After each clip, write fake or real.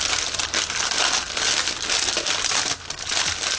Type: real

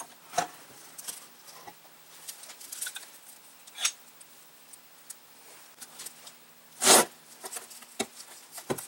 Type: real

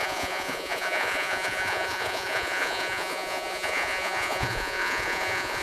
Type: fake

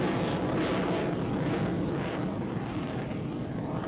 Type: real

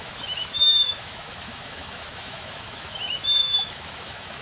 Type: fake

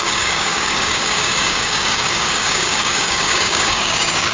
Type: fake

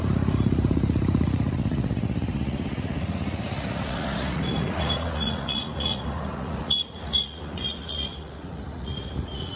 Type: fake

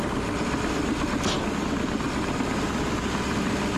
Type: real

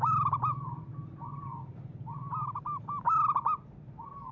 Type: real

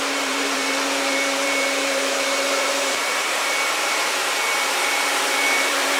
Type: fake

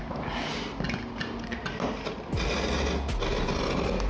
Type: real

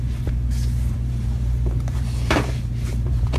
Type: fake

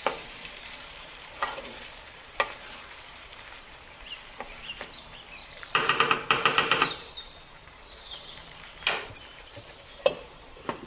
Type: fake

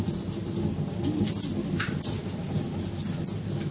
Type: real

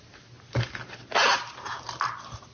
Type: real